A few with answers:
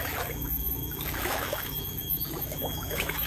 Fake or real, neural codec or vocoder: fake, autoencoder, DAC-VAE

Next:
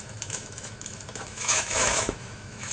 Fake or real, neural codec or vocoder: fake, autoencoder, DAC-VAE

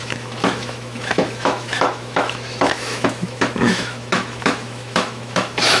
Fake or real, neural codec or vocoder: fake, autoencoder, DAC-VAE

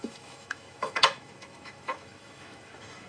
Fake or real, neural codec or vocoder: fake, autoencoder, DAC-VAE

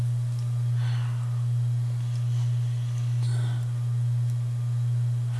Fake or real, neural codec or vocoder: real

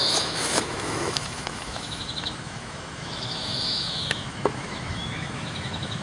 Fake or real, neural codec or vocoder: fake, autoencoder, DAC-VAE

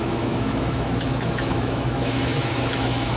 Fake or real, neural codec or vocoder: fake, autoencoder, DAC-VAE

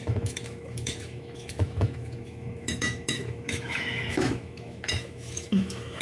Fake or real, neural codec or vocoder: fake, autoencoder, DAC-VAE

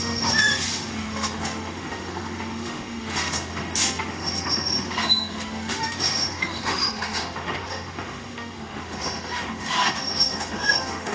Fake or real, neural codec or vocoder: fake, autoencoder, DAC-VAE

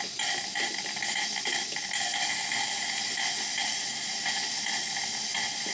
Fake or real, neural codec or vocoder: real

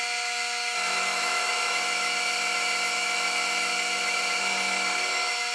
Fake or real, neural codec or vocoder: fake, autoencoder, DAC-VAE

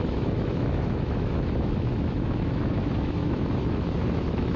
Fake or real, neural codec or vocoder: fake, autoencoder, DAC-VAE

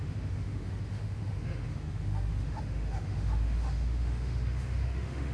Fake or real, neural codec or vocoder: fake, autoencoder, DAC-VAE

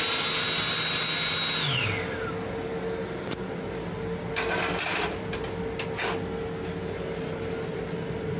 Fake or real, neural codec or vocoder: real